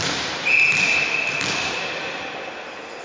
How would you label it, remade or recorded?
recorded